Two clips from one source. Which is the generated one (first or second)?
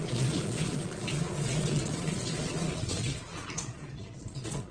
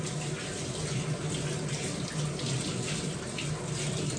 first